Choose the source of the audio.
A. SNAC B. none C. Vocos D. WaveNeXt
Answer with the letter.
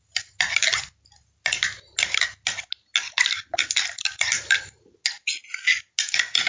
B